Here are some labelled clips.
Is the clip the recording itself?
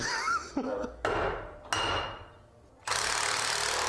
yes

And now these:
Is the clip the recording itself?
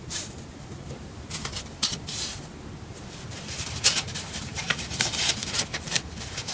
no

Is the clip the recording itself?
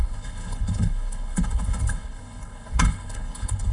no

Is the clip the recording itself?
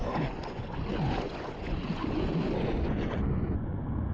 no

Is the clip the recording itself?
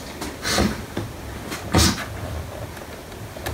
yes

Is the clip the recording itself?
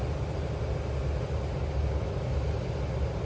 yes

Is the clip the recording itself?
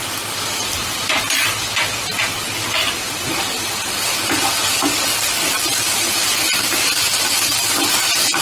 yes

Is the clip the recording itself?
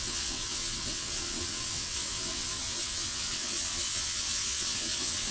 no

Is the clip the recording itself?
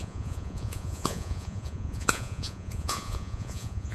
no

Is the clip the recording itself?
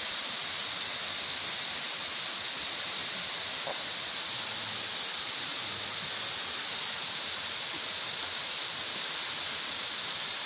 yes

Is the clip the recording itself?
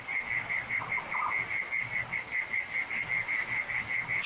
yes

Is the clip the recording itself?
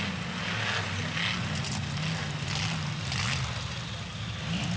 yes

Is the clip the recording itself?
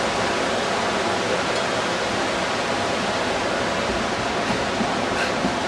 yes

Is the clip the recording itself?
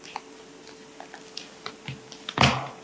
yes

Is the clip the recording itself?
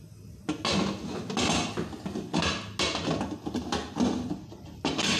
yes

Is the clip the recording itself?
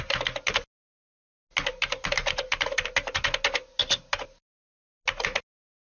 yes